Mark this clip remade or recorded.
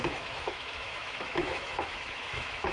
remade